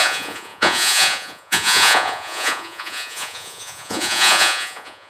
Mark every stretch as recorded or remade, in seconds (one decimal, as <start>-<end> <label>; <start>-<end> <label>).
0.0-5.1 remade